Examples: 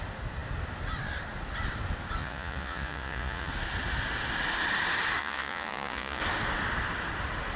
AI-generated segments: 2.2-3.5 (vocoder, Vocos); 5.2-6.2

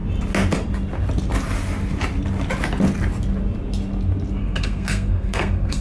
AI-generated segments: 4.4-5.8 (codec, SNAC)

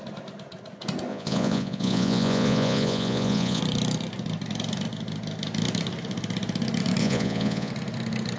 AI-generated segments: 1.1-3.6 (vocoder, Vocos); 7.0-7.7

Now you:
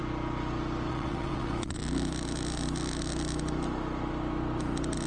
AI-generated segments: 0.9-1.8 (vocoder, WaveNeXt)

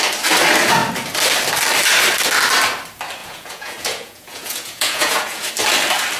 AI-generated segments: 3.2-5.5 (vocoder, Vocos)

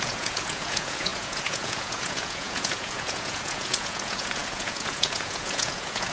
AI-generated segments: 0.0-6.1 (vocoder, Vocos)